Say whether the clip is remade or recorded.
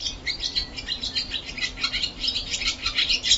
recorded